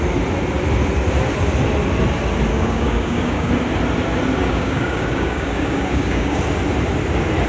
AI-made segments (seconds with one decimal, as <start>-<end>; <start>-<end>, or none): 2.5-3.5; 4.4-6.4